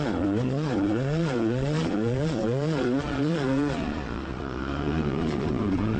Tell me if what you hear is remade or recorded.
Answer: remade